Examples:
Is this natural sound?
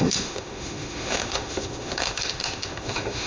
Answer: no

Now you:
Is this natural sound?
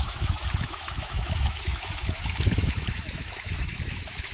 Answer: no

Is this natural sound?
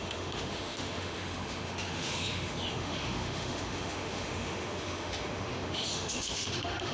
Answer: no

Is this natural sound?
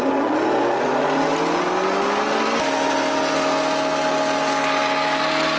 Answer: yes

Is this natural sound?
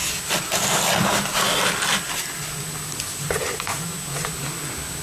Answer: yes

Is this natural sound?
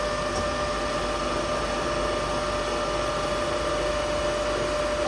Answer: yes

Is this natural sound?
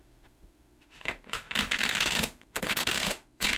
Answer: no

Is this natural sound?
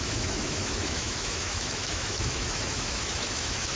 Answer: no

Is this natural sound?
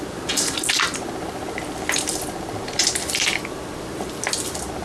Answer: yes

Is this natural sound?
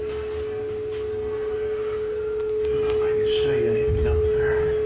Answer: yes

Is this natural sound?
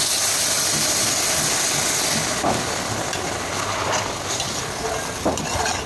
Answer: yes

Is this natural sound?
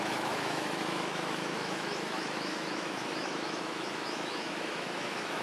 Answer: no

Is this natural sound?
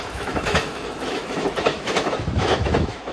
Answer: no